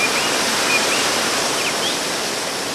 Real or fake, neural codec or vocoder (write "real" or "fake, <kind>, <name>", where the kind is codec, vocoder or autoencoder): real